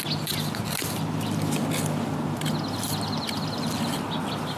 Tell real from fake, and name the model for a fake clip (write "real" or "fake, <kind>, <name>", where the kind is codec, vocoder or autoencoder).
real